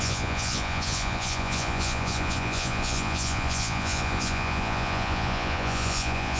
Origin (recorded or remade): remade